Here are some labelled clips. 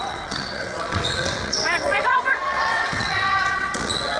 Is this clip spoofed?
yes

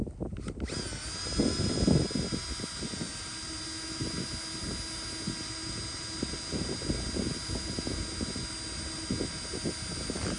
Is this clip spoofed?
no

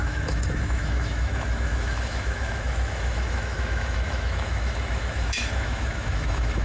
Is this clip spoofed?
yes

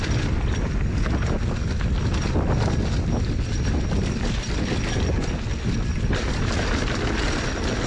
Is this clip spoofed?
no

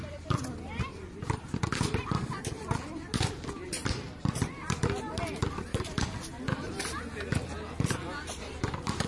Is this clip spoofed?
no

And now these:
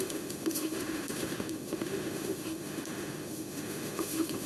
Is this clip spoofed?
yes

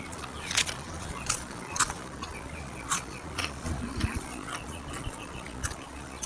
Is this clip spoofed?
yes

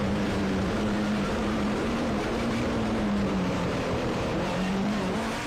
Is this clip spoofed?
yes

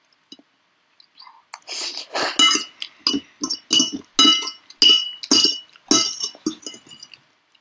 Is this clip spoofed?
no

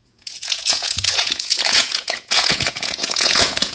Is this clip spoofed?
yes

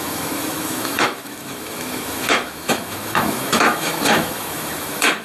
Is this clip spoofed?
yes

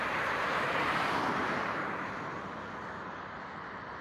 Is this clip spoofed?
yes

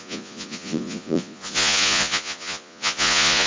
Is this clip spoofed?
yes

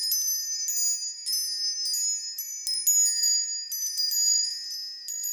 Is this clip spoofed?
no